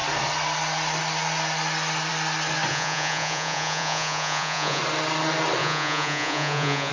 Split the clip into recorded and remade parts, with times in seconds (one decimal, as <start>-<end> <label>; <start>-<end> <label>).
0.0-2.7 recorded; 2.7-4.8 remade; 4.8-5.6 recorded; 5.6-6.9 remade